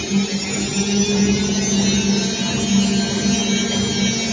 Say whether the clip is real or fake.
real